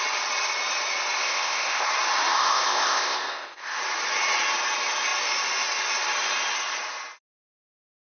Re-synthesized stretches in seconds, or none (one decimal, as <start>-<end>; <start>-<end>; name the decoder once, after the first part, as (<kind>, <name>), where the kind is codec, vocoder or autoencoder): 1.2-1.9 (codec, ZipCodec); 2.3-3.8